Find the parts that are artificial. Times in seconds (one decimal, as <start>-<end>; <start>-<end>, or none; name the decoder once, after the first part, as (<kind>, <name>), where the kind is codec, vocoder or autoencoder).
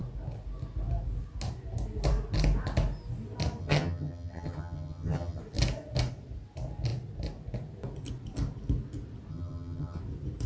3.6-5.4 (vocoder, HiFi-GAN); 9.3-10.0